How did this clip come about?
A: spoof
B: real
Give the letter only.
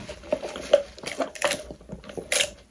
B